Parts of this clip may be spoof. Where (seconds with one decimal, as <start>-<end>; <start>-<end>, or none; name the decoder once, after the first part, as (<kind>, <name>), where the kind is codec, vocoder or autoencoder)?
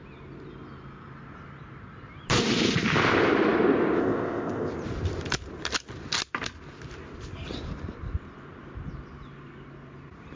4.0-4.7 (codec, ZipCodec)